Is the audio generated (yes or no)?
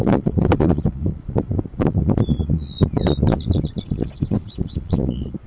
yes